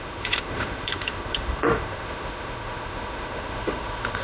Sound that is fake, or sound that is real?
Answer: fake